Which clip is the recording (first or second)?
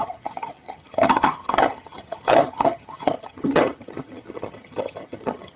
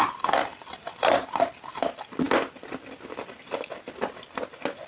second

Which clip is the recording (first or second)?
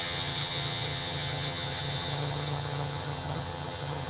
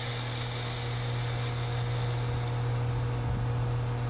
second